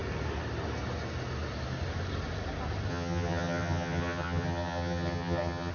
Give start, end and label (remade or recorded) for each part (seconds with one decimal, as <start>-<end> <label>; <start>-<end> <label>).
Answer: 0.0-2.9 recorded; 2.9-5.7 remade